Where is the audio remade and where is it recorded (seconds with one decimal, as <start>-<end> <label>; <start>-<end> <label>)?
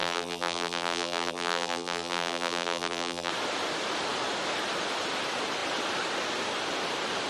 0.0-3.3 remade; 3.3-7.3 recorded